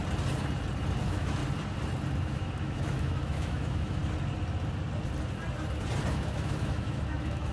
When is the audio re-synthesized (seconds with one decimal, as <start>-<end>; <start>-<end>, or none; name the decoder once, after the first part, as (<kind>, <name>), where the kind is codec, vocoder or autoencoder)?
1.0-1.4 (autoencoder, DAC-VAE); 2.2-4.0; 6.1-7.5